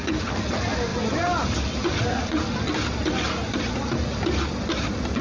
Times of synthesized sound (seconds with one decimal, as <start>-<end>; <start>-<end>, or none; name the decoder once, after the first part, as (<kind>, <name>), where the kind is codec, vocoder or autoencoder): 0.9-1.7 (vocoder, BigVGAN v2)